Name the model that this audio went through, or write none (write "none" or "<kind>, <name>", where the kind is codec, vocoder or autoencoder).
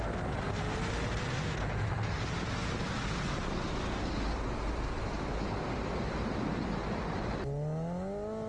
none